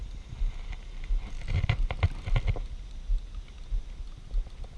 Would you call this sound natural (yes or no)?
yes